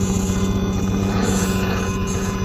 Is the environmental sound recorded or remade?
remade